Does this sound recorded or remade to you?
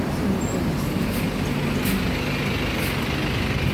recorded